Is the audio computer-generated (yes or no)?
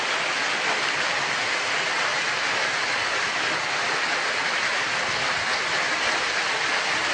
no